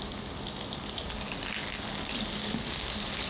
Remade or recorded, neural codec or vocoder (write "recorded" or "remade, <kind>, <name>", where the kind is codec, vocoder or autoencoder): recorded